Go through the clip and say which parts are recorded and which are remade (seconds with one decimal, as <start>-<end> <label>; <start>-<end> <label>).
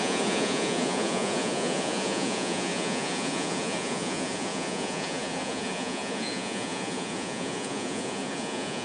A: 0.0-8.8 remade